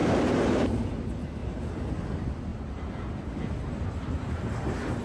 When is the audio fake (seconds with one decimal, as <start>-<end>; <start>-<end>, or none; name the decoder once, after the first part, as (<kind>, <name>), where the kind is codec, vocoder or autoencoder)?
0.6-1.4 (vocoder, BigVGAN v2); 1.9-2.5; 4.3-5.0